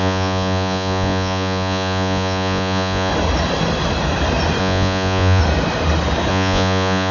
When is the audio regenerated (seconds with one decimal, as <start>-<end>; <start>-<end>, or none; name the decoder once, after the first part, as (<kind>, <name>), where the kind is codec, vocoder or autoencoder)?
0.0-3.1 (vocoder, Vocos); 4.6-5.4; 6.3-7.1